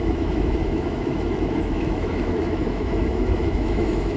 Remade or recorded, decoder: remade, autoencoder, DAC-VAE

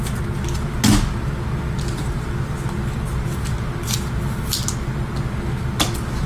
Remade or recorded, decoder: recorded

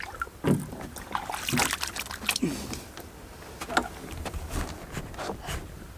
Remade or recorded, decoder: recorded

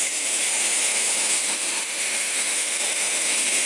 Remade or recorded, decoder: remade, autoencoder, DAC-VAE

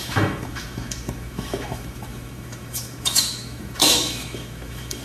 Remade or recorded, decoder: remade, autoencoder, DAC-VAE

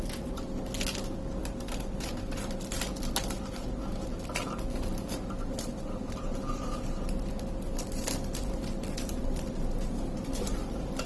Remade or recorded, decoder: recorded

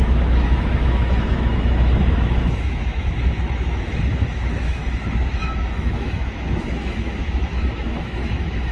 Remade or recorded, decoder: remade, autoencoder, DAC-VAE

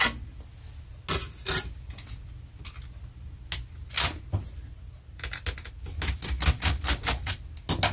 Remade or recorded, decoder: recorded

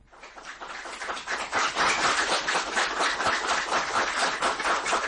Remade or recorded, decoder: recorded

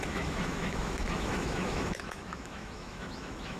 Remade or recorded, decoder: remade, autoencoder, DAC-VAE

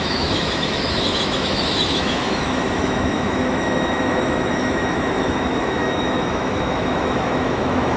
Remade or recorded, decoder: remade, autoencoder, DAC-VAE